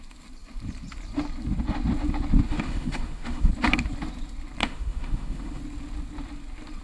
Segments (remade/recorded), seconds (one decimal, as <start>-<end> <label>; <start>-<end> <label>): 0.0-2.5 recorded; 2.5-3.5 remade; 3.5-4.6 recorded; 4.6-5.6 remade; 5.6-6.8 recorded